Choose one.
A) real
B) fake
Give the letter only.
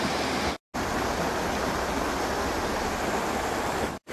A